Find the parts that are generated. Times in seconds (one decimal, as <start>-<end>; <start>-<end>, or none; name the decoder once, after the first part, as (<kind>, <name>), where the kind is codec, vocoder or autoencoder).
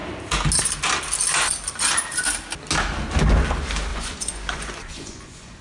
3.9-5.6 (vocoder, Vocos)